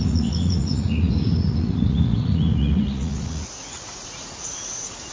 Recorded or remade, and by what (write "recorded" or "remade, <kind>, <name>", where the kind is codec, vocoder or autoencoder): remade, vocoder, Vocos